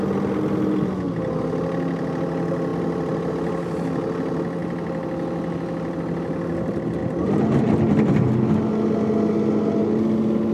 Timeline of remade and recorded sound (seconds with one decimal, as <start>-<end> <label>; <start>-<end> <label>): 0.0-2.7 recorded; 2.7-3.3 remade; 3.3-7.0 recorded; 7.0-7.6 remade; 7.6-10.5 recorded